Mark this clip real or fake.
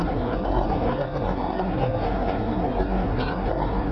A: fake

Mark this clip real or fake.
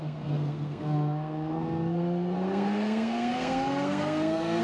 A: fake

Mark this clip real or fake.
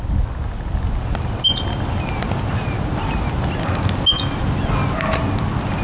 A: real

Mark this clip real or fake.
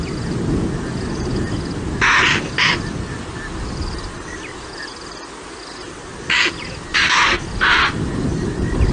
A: real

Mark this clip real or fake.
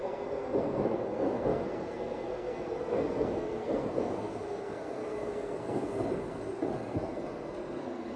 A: fake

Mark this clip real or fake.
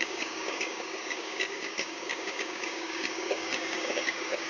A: fake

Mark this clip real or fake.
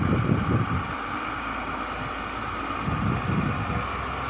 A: real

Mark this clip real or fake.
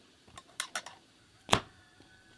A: real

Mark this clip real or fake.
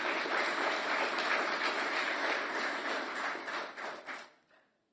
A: real